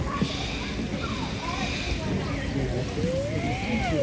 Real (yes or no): yes